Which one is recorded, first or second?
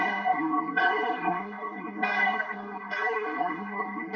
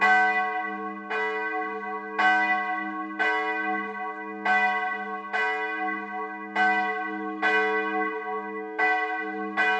second